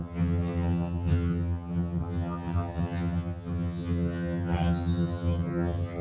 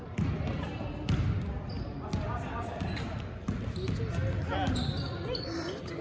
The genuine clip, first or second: second